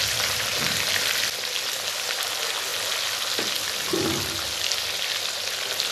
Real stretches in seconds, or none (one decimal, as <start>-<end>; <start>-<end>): 0.0-5.9